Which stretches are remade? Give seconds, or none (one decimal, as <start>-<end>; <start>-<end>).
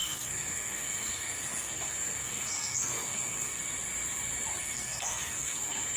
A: 0.0-3.6; 4.6-6.0